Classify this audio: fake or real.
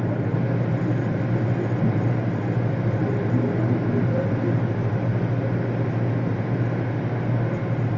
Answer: real